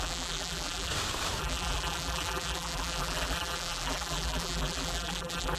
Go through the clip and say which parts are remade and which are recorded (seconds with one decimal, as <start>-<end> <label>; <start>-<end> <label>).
0.0-0.9 remade; 0.9-1.4 recorded; 1.4-5.6 remade

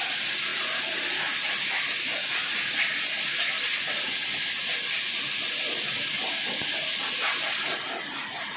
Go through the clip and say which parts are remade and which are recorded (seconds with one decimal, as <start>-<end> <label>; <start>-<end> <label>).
0.0-8.6 recorded

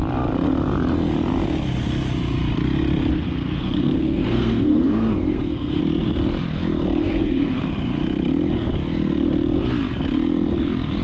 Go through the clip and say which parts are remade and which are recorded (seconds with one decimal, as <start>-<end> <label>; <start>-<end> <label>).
0.0-3.1 recorded; 3.1-5.8 remade; 5.8-7.0 recorded; 7.0-7.6 remade; 7.6-11.0 recorded